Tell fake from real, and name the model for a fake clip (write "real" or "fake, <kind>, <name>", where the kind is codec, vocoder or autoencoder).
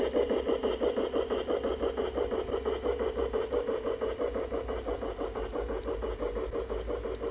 real